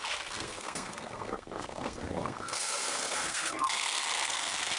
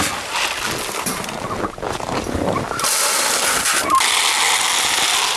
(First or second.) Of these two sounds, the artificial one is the first